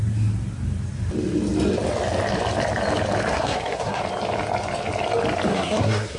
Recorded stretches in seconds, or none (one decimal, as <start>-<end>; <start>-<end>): 0.0-3.3; 4.0-5.5